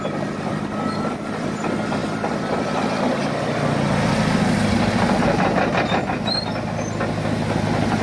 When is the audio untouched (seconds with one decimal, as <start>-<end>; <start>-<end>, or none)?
0.0-8.0